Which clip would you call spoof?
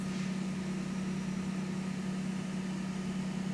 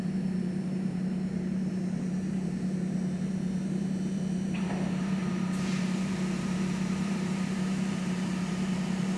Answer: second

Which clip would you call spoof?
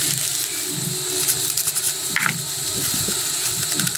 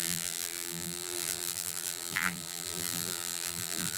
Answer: second